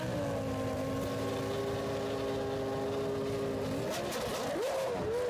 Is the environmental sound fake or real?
real